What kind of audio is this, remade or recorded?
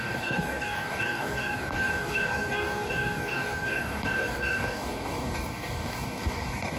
remade